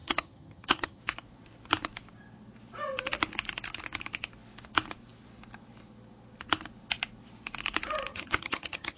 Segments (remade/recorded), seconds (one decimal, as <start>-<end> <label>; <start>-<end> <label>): 0.0-1.0 remade; 1.0-8.1 recorded; 8.1-9.0 remade